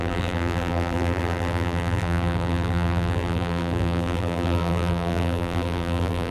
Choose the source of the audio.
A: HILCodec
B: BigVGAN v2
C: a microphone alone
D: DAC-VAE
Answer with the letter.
B